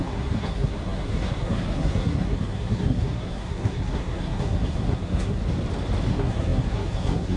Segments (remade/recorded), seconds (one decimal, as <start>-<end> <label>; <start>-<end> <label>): 0.0-5.4 remade; 5.4-6.1 recorded; 6.1-7.4 remade